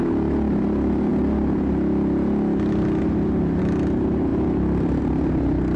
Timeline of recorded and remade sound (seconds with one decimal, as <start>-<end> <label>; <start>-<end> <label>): 0.0-5.8 recorded